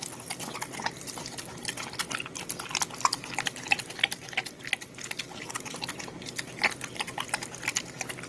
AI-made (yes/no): no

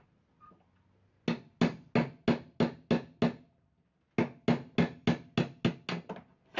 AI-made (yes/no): no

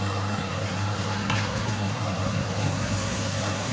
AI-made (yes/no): yes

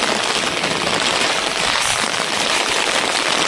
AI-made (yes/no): no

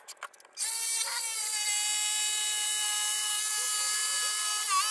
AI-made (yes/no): no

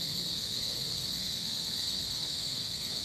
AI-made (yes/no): yes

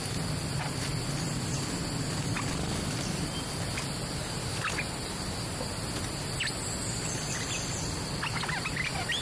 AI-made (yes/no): no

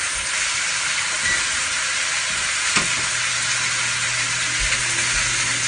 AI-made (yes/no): no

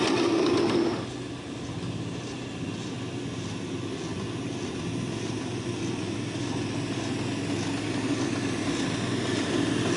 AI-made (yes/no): no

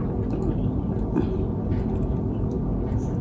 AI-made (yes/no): no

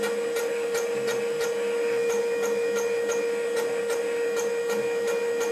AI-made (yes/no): no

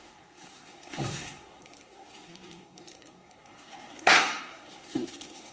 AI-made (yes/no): yes